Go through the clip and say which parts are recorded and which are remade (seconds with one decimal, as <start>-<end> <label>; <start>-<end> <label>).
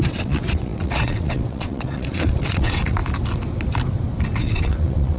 0.0-3.0 remade; 3.0-4.4 recorded; 4.4-5.2 remade